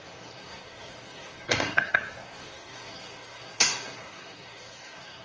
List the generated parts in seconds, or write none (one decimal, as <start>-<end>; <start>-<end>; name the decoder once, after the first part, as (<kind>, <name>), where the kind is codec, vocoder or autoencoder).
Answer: 0.0-5.2 (codec, SNAC)